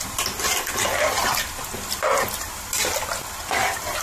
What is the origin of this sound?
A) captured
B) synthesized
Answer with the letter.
A